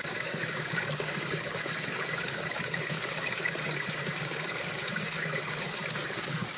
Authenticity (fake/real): fake